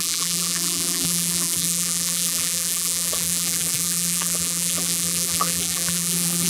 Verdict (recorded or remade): remade